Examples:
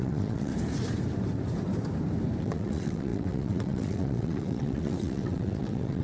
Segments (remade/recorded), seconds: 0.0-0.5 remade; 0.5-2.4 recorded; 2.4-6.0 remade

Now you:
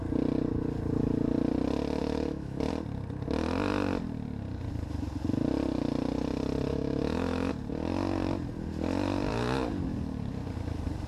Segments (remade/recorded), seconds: 0.0-2.0 recorded; 2.0-2.7 remade; 2.7-6.7 recorded; 6.7-7.5 remade; 7.5-11.1 recorded

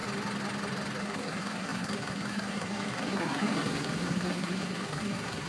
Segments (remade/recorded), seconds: 0.0-1.0 recorded; 1.0-5.5 remade

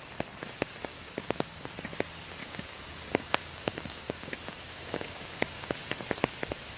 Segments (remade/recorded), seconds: 0.0-0.9 recorded; 0.9-1.7 remade; 1.7-2.4 recorded; 2.4-5.7 remade; 5.7-6.8 recorded

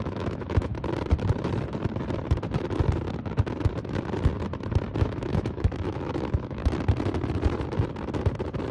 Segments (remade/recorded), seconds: 0.0-0.7 remade; 0.7-5.0 recorded; 5.0-6.6 remade; 6.6-8.7 recorded

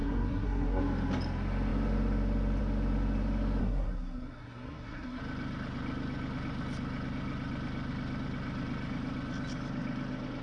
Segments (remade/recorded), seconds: 0.0-0.8 remade; 0.8-3.6 recorded; 3.6-5.2 remade; 5.2-10.4 recorded